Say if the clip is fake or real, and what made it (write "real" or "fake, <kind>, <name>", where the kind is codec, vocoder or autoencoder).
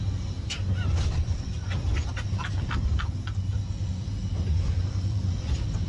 real